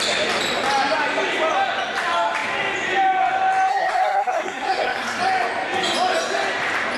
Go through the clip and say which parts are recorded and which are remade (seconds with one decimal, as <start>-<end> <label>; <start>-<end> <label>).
0.0-3.7 recorded; 3.7-5.2 remade; 5.2-7.0 recorded